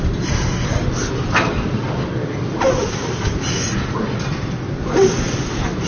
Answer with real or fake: real